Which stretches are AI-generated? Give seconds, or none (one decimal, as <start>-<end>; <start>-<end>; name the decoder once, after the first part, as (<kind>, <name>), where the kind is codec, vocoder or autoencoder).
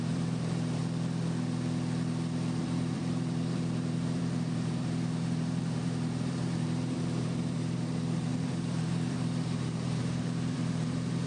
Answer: 0.0-0.8 (vocoder, BigVGAN v2); 2.6-11.3